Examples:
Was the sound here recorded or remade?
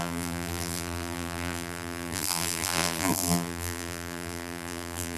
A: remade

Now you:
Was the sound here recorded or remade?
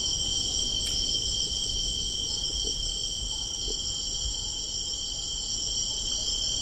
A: recorded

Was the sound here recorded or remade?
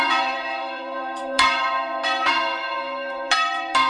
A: remade